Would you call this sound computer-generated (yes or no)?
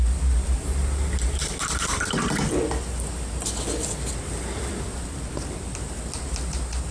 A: no